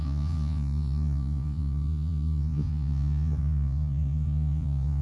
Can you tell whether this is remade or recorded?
remade